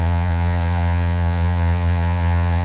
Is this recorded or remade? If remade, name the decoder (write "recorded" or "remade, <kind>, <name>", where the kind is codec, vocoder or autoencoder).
remade, vocoder, Vocos